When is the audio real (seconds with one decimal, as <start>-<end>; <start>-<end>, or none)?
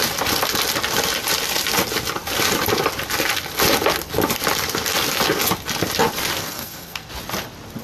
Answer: 0.0-6.4; 7.1-7.8